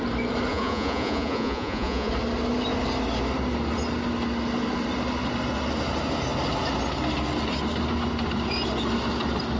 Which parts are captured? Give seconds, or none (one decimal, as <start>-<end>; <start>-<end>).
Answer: 0.0-0.5; 2.1-9.6